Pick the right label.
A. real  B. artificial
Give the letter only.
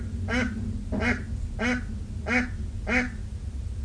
A